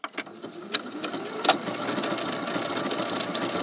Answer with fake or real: real